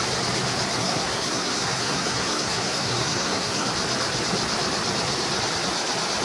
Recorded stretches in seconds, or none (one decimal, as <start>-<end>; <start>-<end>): 0.0-0.8; 3.7-6.2